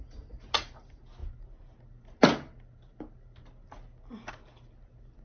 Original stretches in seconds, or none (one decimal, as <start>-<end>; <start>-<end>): 0.0-5.2